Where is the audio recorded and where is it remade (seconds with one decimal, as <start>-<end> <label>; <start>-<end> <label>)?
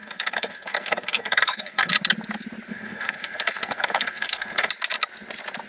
0.0-1.9 remade; 1.9-2.7 recorded; 2.7-4.7 remade; 4.7-5.7 recorded